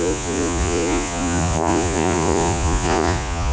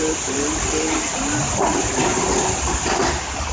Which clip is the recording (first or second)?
second